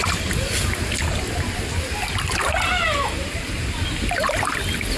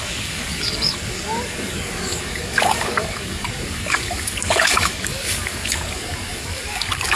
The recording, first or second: first